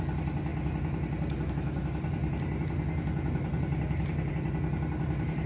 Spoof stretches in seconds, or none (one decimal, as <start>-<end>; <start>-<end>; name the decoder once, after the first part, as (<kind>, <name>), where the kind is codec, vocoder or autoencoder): none